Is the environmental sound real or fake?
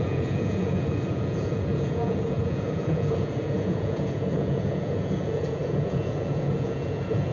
fake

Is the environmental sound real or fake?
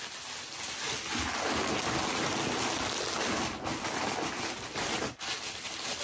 real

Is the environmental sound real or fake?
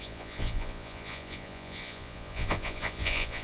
fake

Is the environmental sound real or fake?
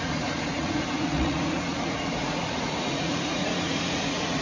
fake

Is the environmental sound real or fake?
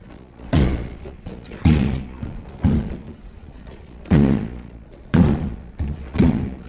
fake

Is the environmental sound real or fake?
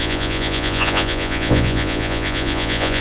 fake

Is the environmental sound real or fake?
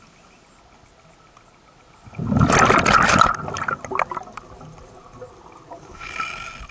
real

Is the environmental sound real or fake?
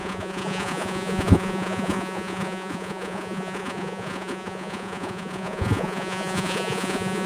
fake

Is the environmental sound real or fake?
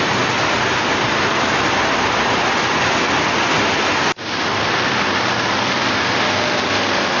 real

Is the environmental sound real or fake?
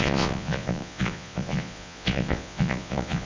fake